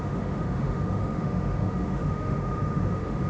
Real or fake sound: fake